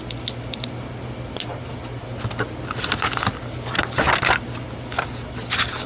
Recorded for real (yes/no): yes